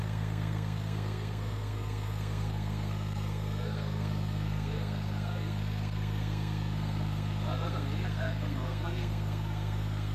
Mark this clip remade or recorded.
remade